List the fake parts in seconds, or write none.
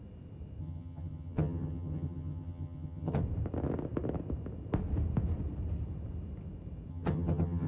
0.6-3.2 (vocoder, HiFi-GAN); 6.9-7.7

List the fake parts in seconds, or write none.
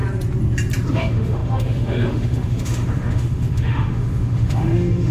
0.9-5.1 (autoencoder, DAC-VAE)